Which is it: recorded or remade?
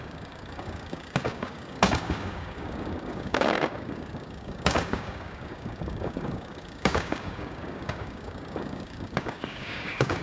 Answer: remade